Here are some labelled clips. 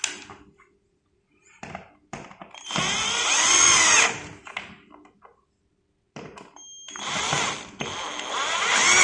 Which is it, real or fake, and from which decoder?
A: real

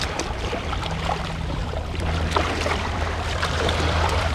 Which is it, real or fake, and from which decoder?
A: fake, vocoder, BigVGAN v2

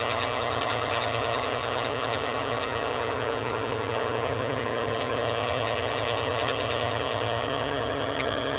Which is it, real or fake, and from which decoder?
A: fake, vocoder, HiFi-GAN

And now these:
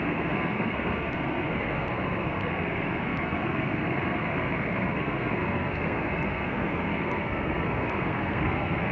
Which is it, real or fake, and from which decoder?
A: fake, codec, SNAC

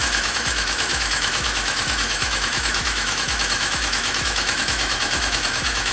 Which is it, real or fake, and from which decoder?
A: fake, autoencoder, DAC-VAE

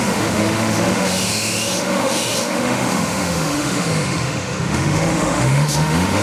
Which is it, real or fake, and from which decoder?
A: fake, autoencoder, DAC-VAE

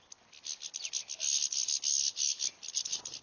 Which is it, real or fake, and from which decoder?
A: real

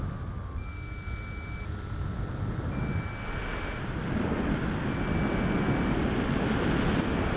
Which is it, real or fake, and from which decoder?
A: real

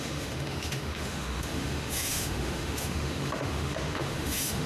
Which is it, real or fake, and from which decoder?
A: fake, autoencoder, DAC-VAE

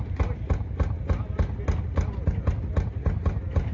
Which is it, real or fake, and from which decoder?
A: real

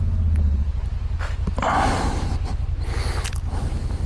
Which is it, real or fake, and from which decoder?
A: real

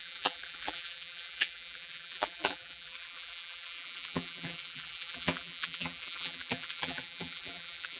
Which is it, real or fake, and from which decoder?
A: fake, vocoder, BigVGAN v2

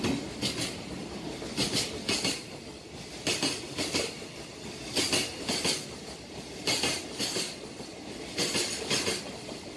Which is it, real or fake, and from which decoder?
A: real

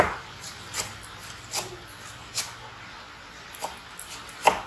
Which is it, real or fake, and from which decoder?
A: real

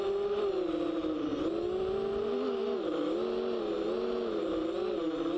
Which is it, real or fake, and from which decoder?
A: real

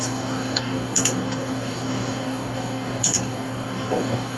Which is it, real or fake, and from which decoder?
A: fake, codec, DAC